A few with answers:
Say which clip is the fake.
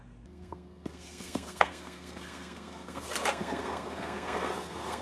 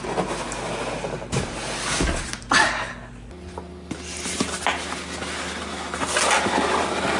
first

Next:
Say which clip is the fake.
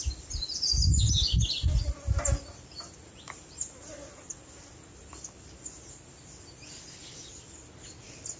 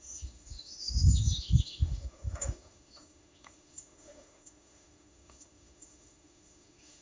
second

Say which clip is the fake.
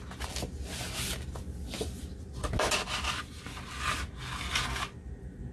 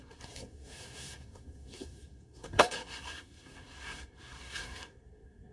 second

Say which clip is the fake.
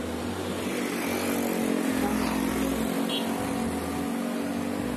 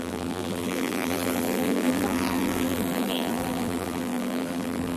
second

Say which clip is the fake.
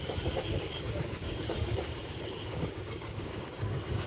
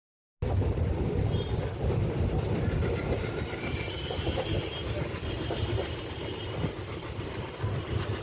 first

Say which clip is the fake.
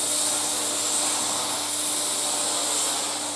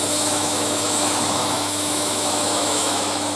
second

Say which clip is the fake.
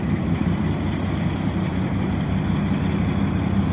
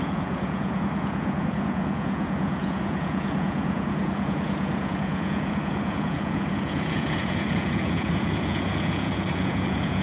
second